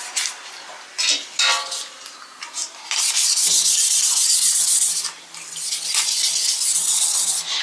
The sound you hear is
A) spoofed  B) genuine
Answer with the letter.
B